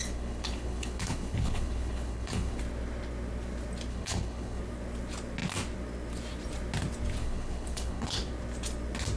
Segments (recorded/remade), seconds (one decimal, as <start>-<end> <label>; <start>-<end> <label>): 0.0-2.6 remade; 2.6-3.9 recorded; 3.9-4.6 remade; 4.6-7.2 recorded; 7.2-8.3 remade; 8.3-9.2 recorded